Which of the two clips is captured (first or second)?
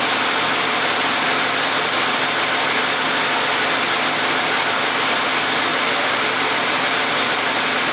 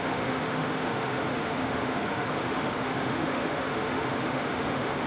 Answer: first